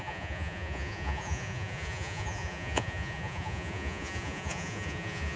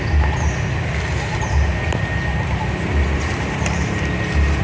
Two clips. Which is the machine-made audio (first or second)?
first